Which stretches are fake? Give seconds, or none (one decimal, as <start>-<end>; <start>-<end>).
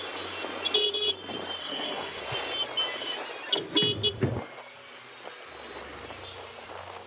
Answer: 1.6-2.2